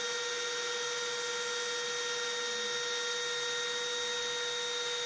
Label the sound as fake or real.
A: real